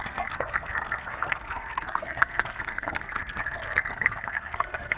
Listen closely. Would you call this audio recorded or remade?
remade